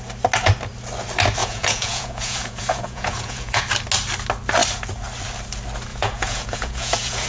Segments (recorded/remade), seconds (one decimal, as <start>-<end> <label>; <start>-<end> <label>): 0.0-1.4 recorded; 1.4-3.6 remade; 3.6-5.9 recorded; 5.9-7.3 remade